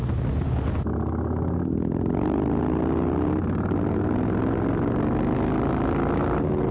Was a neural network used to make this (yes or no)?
no